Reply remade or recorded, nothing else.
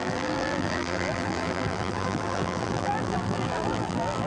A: remade